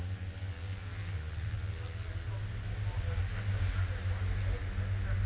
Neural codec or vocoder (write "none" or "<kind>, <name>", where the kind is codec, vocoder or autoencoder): none